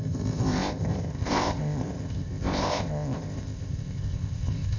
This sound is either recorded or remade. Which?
remade